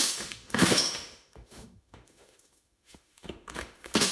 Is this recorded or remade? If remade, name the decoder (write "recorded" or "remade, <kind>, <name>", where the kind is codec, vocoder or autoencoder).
remade, autoencoder, DAC-VAE